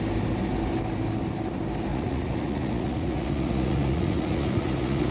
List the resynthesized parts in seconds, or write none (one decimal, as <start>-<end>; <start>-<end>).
1.9-5.1